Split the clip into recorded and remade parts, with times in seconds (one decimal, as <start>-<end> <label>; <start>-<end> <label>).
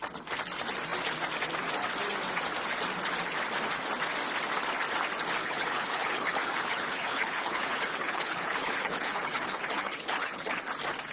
0.0-5.4 recorded; 5.4-10.6 remade; 10.6-11.1 recorded